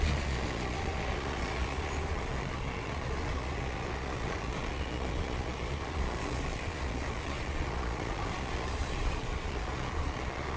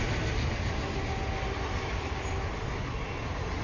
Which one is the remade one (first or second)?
first